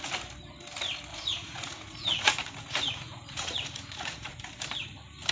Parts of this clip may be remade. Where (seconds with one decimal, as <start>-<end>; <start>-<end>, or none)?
1.1-4.3